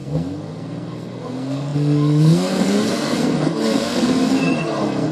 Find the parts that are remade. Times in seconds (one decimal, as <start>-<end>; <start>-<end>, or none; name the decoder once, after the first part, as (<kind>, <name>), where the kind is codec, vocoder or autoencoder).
0.0-5.1 (codec, SNAC)